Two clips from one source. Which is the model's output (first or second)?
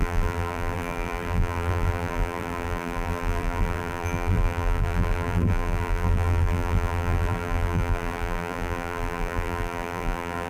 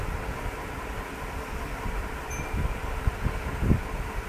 first